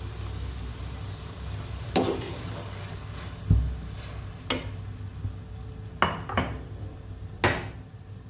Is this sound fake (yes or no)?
no